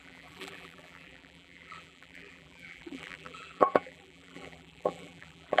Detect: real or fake fake